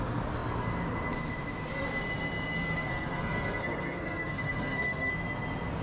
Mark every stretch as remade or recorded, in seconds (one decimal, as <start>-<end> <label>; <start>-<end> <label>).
0.0-2.9 recorded; 2.9-5.1 remade; 5.1-5.8 recorded